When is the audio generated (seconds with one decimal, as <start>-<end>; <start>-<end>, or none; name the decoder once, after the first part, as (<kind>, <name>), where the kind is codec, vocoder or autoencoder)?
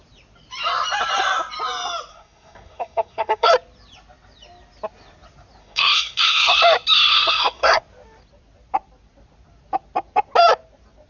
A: 2.1-3.5 (codec, SNAC); 5.6-6.6; 7.1-7.8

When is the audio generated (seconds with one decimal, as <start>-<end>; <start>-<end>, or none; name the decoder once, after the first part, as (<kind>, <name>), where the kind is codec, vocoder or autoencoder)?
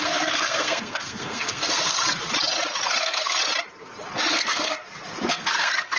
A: 0.0-2.0 (codec, SNAC); 3.0-3.4; 4.3-4.8; 5.3-6.0